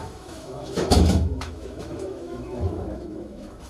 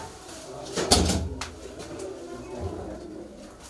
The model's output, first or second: first